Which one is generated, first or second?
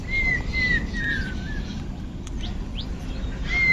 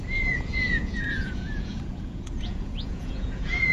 second